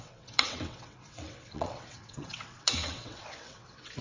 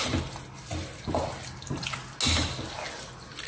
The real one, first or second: second